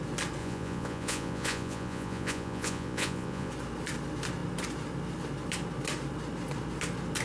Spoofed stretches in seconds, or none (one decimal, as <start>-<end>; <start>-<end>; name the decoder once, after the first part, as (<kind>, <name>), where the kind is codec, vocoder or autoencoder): 0.4-3.5 (vocoder, Vocos)